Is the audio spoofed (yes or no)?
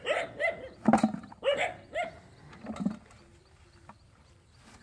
no